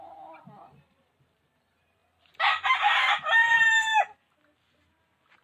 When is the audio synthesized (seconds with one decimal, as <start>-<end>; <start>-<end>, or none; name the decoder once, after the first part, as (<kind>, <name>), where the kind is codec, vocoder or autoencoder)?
0.0-2.0 (vocoder, BigVGAN v2); 2.5-3.9